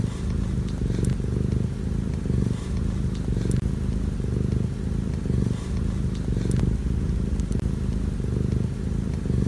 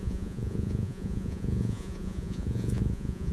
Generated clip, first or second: second